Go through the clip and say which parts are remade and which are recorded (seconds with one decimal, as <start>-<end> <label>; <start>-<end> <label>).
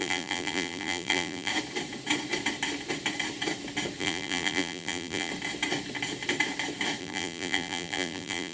0.0-1.5 remade; 1.5-4.0 recorded; 4.0-5.3 remade; 5.3-7.0 recorded; 7.0-8.5 remade